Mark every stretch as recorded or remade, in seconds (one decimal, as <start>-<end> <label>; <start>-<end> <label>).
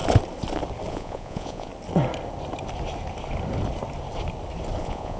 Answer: 0.0-0.9 recorded; 0.9-1.7 remade; 1.7-4.8 recorded; 4.8-5.2 remade